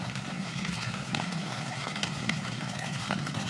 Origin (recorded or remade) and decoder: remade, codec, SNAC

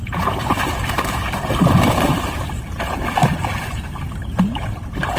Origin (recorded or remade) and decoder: remade, vocoder, BigVGAN v2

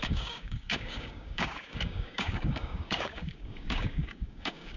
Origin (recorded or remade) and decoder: remade, codec, DAC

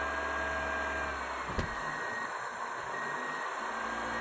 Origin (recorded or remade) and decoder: recorded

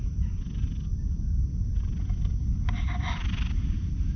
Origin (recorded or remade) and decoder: recorded